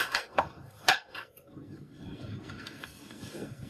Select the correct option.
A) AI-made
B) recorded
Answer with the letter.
A